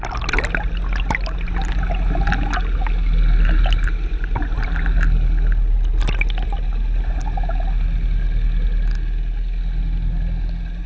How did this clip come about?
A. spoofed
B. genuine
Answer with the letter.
B